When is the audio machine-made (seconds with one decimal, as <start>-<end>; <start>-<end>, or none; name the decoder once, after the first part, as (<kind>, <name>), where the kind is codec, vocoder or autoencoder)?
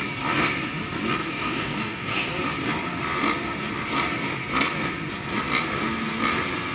1.2-2.3 (codec, DAC)